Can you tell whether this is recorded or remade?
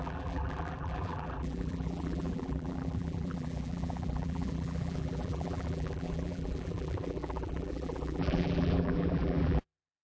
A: remade